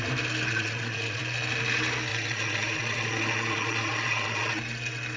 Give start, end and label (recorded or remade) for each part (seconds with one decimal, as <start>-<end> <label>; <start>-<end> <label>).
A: 0.0-0.5 recorded; 0.5-1.2 remade; 1.2-2.1 recorded; 2.1-4.6 remade; 4.6-5.2 recorded